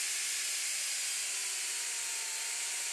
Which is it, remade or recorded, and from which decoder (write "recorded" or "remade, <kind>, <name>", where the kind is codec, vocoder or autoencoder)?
recorded